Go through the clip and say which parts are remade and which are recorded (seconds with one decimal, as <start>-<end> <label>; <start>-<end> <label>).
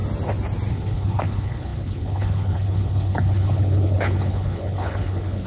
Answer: 0.0-0.7 recorded; 0.7-5.5 remade